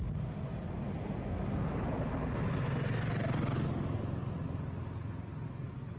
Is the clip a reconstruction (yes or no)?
no